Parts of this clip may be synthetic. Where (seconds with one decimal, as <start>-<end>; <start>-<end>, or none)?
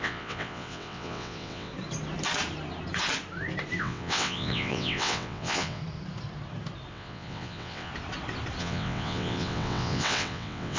0.0-1.7; 3.8-5.8; 6.9-7.9; 8.6-10.8